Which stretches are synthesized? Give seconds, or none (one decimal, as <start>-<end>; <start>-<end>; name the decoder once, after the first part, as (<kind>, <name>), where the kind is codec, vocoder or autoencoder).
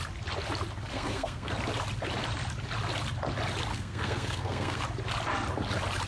0.9-1.5 (codec, SNAC); 3.7-4.8